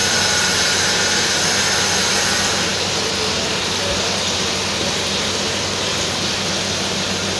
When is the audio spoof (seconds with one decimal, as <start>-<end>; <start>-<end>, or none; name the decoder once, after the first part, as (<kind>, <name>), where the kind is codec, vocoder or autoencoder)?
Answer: 0.0-1.3 (vocoder, BigVGAN v2)